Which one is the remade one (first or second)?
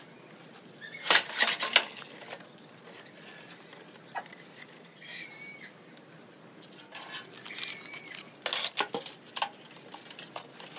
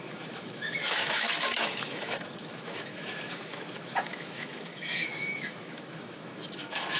second